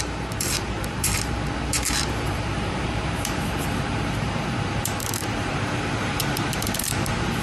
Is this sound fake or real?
fake